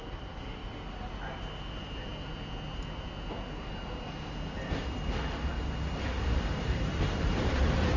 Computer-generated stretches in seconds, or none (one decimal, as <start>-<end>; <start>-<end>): 0.0-0.6; 1.4-2.1; 6.5-8.0